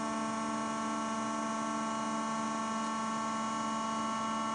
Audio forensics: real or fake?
real